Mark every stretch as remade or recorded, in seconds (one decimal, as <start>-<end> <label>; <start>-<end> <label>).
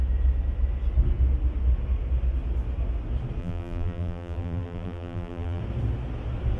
0.0-3.4 recorded; 3.4-5.6 remade; 5.6-6.6 recorded